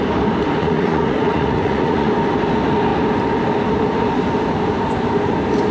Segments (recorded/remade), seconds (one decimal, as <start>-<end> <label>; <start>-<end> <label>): 0.0-0.6 recorded; 0.6-2.1 remade; 2.1-5.7 recorded

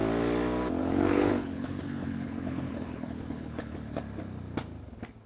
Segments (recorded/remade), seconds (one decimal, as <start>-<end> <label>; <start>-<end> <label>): 0.0-0.8 recorded; 0.8-4.0 remade; 4.0-5.3 recorded

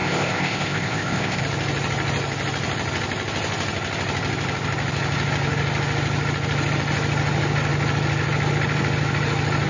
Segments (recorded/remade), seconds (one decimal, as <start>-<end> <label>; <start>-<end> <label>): 0.0-1.4 remade; 1.4-9.7 recorded

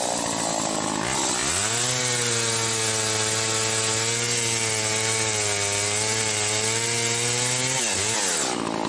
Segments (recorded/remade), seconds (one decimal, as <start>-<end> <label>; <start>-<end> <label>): 0.0-8.9 recorded

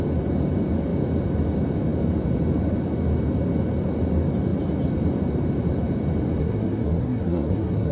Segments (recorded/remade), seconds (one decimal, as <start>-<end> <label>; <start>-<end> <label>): 0.0-6.4 recorded; 6.4-7.9 remade

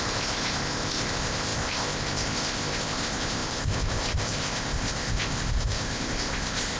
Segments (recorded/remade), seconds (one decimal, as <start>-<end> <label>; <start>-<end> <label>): 0.0-6.8 remade

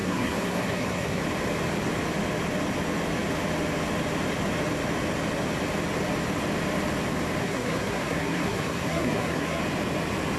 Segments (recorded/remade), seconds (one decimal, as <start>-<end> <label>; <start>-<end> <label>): 0.0-1.2 remade; 1.2-7.4 recorded; 7.4-9.6 remade; 9.6-10.4 recorded

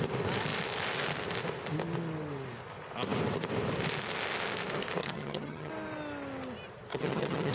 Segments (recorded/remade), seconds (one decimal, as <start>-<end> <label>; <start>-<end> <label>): 0.0-5.0 recorded; 5.0-5.7 remade; 5.7-6.9 recorded; 6.9-7.5 remade